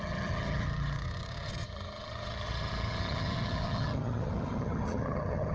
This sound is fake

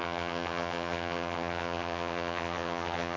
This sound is fake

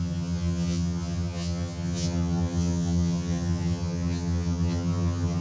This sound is fake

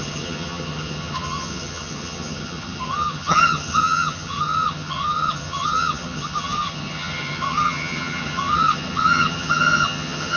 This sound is fake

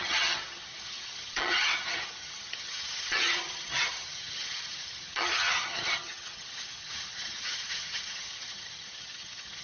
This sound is fake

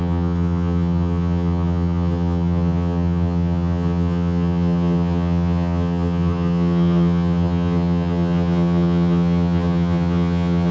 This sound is fake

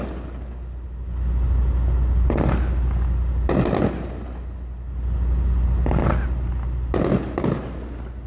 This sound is real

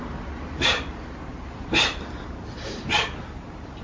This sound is real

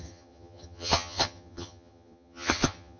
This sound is fake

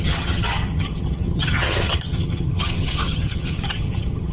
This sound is fake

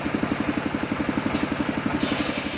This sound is real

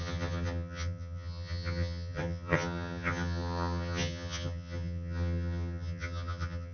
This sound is fake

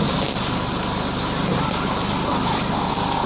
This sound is real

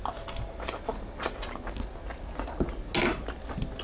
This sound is real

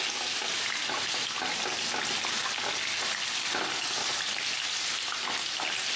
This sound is real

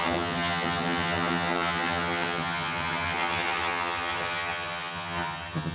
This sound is fake